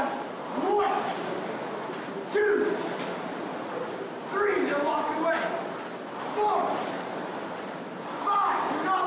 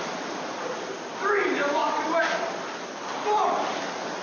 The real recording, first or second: first